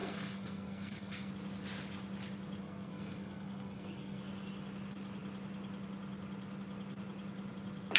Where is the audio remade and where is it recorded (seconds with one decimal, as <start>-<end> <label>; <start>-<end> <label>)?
0.0-1.3 remade; 1.3-2.6 recorded; 2.6-4.2 remade; 4.2-8.0 recorded